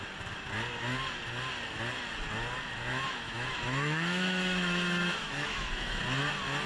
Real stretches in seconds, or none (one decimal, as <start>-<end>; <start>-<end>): 0.0-2.9; 6.0-6.7